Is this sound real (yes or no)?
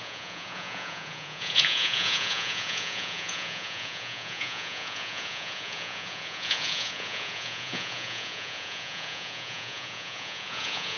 no